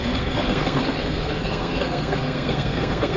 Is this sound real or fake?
fake